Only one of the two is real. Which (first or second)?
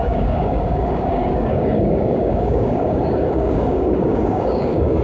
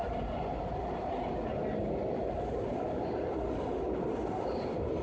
second